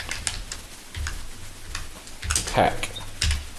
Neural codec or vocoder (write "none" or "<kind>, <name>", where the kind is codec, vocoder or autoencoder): none